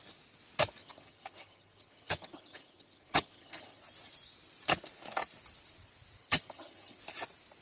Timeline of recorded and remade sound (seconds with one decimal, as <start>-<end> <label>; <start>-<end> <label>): 0.0-0.8 recorded; 0.8-3.8 remade; 3.8-6.2 recorded; 6.2-7.0 remade; 7.0-7.6 recorded